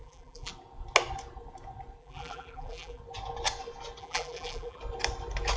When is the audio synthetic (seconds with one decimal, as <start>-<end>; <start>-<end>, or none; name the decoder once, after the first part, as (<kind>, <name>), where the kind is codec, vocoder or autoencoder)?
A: 0.0-0.5 (vocoder, BigVGAN v2); 2.0-3.0; 4.0-4.8